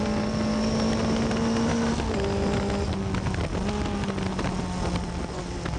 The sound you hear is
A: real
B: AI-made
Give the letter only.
A